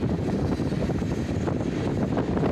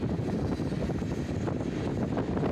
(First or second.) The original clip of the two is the second